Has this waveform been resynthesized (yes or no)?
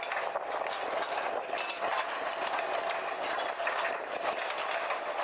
no